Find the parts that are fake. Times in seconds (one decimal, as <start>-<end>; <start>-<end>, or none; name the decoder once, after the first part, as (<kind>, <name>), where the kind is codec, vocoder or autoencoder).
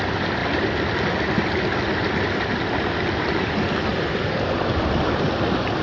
none